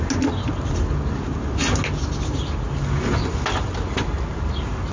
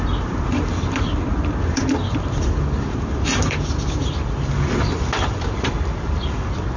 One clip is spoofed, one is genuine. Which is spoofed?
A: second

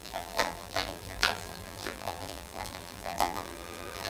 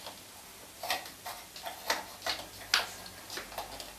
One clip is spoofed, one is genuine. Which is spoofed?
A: first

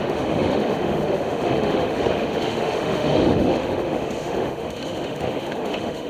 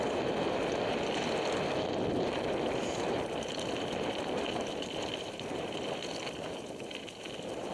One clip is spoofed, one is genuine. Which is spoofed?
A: first